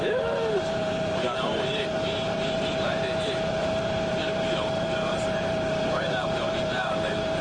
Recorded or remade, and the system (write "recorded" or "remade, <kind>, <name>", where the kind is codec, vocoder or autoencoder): remade, vocoder, BigVGAN v2